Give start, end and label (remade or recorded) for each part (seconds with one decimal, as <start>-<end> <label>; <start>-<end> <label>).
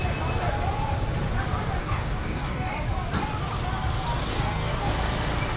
0.0-1.8 recorded; 1.8-2.7 remade; 2.7-4.3 recorded; 4.3-4.9 remade; 4.9-5.6 recorded